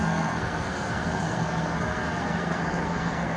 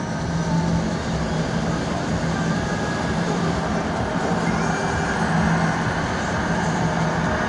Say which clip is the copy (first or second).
first